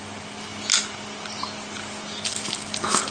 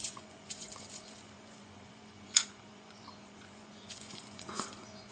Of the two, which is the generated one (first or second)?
second